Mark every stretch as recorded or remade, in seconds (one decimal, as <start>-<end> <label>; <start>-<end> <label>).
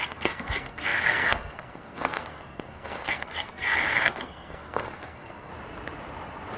0.0-5.5 remade; 5.5-6.6 recorded